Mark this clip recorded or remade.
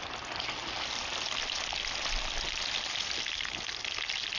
recorded